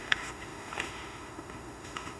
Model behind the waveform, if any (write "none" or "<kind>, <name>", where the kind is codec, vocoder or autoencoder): autoencoder, DAC-VAE